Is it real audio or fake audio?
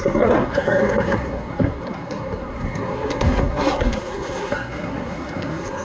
fake